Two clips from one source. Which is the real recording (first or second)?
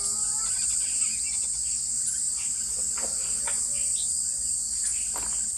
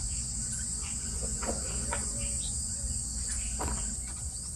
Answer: first